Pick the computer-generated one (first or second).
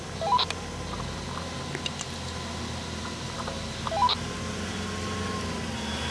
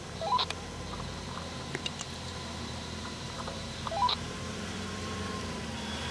second